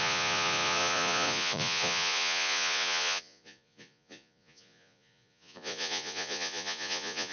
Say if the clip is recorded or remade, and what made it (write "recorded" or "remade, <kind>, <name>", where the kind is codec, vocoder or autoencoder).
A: remade, vocoder, Vocos